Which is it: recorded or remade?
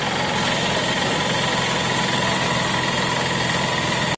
recorded